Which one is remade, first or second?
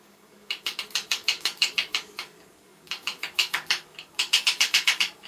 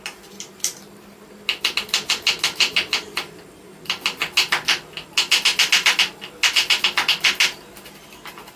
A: first